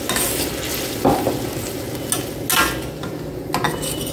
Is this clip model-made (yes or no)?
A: no